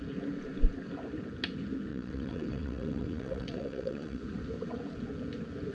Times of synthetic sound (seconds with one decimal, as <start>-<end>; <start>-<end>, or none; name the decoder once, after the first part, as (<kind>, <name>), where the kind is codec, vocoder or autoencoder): 1.9-4.2 (vocoder, WaveNeXt)